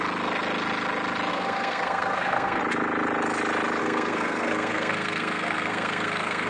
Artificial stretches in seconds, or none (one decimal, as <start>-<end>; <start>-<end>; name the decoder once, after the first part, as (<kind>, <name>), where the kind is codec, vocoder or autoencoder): 1.3-2.6 (codec, SNAC); 3.8-6.5